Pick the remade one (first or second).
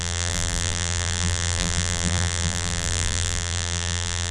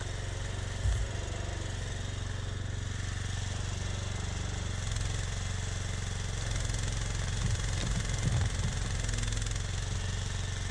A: first